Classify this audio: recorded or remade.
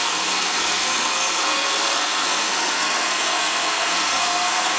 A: remade